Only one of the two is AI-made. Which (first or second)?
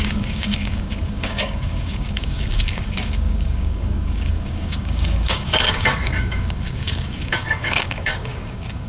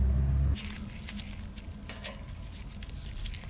first